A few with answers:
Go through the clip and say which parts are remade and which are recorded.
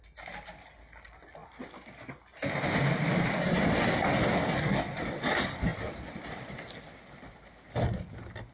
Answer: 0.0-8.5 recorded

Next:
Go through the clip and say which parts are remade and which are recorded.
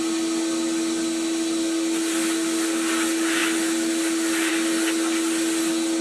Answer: 0.0-6.0 recorded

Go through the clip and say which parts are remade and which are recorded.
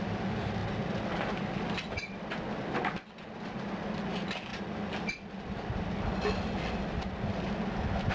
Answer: 0.0-8.1 remade